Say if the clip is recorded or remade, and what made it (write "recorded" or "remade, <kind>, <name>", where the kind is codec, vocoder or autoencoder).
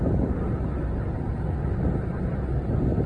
recorded